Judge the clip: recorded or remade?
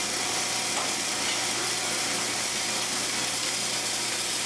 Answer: recorded